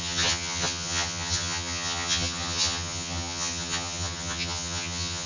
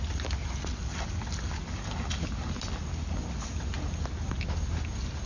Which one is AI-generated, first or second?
first